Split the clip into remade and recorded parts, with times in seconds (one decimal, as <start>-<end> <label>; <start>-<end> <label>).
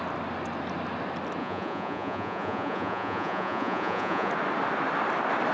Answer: 0.0-1.4 recorded; 1.4-4.3 remade; 4.3-5.5 recorded